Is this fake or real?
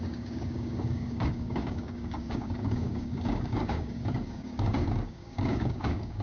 fake